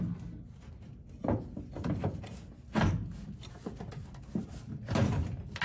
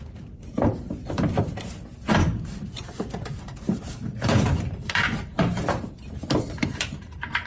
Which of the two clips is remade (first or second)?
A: second